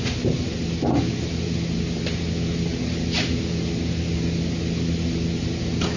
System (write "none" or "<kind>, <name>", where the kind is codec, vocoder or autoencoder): none